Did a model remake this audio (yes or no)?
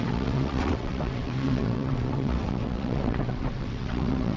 yes